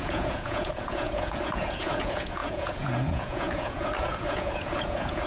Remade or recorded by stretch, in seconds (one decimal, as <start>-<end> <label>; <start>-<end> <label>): 0.0-5.3 remade